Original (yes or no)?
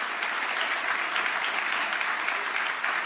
yes